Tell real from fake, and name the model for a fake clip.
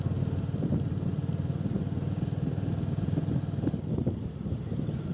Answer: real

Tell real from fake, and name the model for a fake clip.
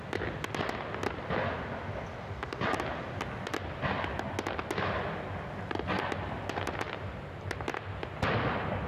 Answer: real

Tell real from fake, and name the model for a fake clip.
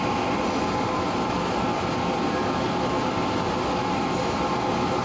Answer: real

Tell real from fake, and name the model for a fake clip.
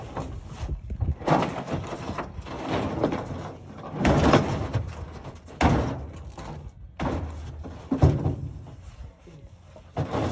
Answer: real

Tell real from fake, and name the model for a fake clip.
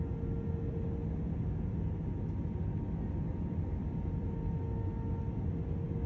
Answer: real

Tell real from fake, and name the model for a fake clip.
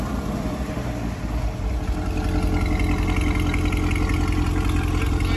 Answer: real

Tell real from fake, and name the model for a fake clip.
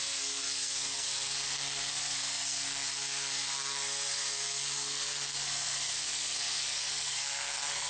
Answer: fake, codec, SNAC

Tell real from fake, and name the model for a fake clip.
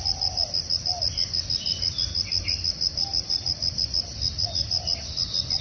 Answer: real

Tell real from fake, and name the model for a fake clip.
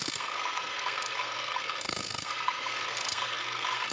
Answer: fake, codec, SNAC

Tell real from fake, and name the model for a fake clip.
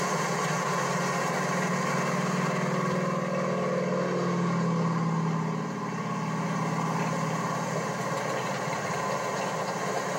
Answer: real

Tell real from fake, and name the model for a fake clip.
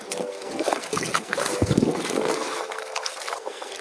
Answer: fake, codec, SNAC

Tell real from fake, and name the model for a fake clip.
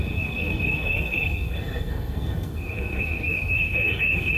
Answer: fake, codec, SNAC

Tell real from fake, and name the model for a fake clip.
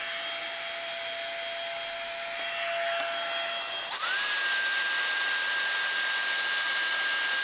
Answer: real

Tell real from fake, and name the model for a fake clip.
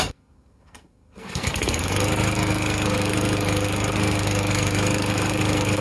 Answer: fake, codec, SNAC